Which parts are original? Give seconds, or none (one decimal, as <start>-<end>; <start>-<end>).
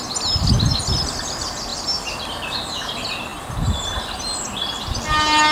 0.0-5.5